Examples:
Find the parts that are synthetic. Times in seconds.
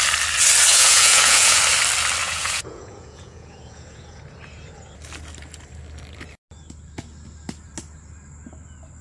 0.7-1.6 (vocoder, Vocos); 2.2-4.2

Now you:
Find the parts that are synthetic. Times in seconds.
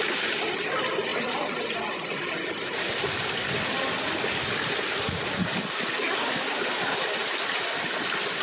none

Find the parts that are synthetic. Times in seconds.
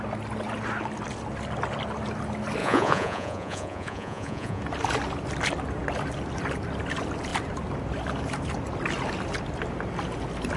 2.6-4.6 (vocoder, Vocos)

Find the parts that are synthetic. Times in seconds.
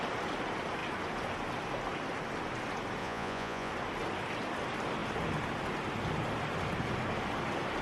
3.0-3.7 (vocoder, Vocos)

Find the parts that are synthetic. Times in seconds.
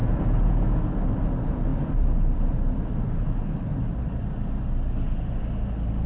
0.0-0.8 (vocoder, Vocos)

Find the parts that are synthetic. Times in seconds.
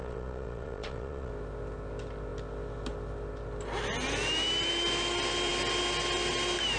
0.0-1.3 (vocoder, Vocos)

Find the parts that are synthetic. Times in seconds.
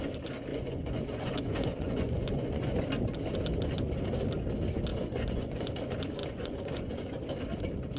0.5-2.7 (vocoder, Vocos); 4.9-5.7; 6.2-7.1